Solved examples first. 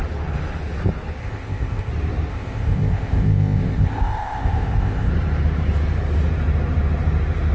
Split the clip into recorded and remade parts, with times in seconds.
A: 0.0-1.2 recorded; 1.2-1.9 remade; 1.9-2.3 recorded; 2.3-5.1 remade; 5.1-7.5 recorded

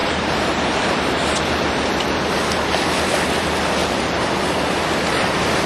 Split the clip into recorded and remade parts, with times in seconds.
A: 0.0-1.9 remade; 1.9-3.8 recorded; 3.8-4.4 remade; 4.4-5.7 recorded